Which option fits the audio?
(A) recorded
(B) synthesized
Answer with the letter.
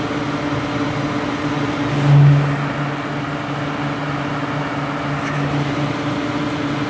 A